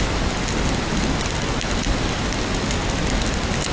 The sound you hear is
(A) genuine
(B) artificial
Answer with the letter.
A